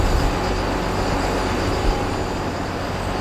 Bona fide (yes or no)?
yes